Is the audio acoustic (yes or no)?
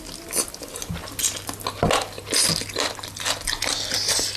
yes